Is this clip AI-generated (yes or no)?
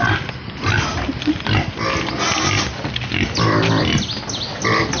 no